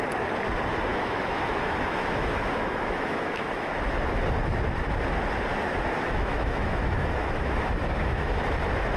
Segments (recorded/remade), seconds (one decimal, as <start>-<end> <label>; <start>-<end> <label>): 0.0-0.9 recorded; 0.9-3.7 remade; 3.7-5.5 recorded; 5.5-8.4 remade; 8.4-9.0 recorded